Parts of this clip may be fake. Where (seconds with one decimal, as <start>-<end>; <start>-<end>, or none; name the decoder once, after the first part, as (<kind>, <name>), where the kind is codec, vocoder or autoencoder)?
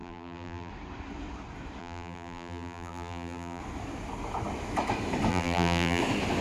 0.0-0.7 (vocoder, BigVGAN v2); 1.8-3.6; 5.3-6.0